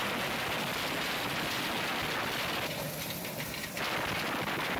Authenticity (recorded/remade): recorded